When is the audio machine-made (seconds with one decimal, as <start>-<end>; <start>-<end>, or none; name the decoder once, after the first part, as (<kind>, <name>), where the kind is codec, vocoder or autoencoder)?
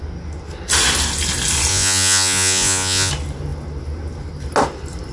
1.7-3.1 (vocoder, Vocos)